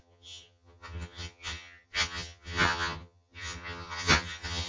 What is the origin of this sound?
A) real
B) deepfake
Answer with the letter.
B